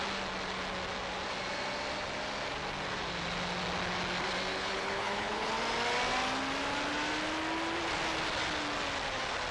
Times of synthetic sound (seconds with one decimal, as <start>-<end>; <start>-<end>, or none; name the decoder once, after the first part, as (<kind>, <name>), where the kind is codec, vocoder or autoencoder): 4.5-5.5 (codec, HILCodec)